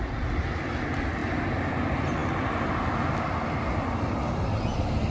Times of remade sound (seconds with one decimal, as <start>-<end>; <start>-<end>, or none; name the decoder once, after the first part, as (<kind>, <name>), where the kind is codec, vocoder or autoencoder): none